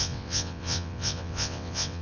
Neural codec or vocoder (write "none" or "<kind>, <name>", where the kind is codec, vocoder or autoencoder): vocoder, WaveNeXt